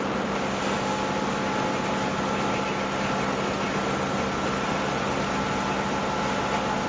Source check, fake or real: real